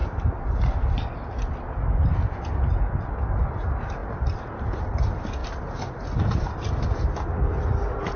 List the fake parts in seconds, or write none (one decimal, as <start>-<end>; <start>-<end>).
none